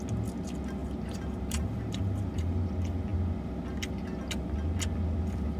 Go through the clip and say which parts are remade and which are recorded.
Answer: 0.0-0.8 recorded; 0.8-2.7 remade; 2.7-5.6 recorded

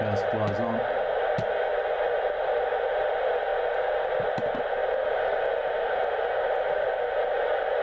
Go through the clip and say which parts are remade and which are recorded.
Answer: 0.0-7.8 recorded

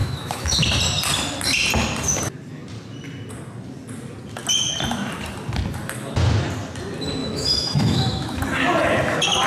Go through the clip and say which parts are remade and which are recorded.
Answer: 0.0-0.6 remade; 0.6-7.2 recorded; 7.2-8.4 remade; 8.4-9.5 recorded